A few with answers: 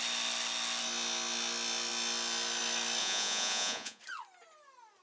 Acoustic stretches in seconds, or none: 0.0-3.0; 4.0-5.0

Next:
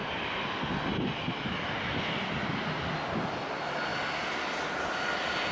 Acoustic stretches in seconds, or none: 0.0-5.5

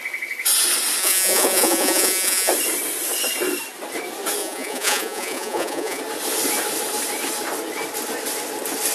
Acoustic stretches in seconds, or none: 0.0-1.0; 2.5-4.4; 6.0-8.9

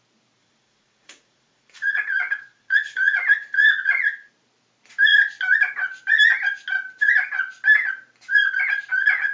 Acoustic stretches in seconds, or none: 0.0-0.4; 4.3-9.3